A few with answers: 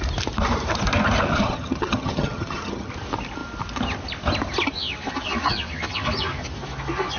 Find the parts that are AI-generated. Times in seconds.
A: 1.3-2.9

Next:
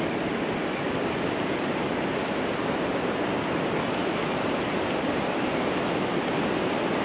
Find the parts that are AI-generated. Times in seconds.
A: none

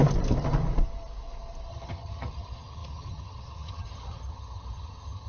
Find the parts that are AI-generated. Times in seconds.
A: 1.7-5.3

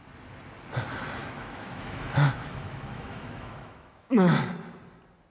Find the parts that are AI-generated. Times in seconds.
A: 1.2-4.4

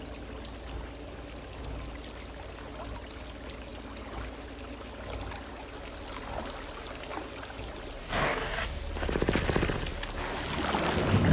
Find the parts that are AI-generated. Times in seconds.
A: 8.0-8.8

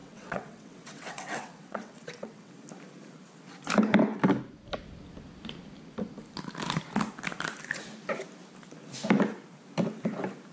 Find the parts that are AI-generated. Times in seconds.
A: 0.0-2.5

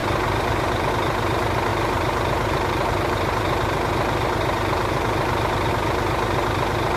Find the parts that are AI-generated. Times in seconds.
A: 0.0-0.9; 1.7-5.7